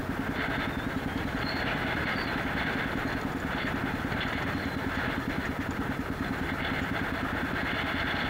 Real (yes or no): yes